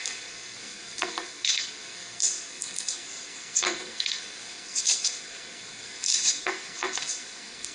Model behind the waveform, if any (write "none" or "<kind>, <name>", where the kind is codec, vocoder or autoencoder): codec, SNAC